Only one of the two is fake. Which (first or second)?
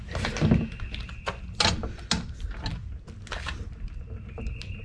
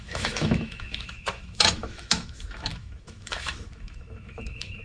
second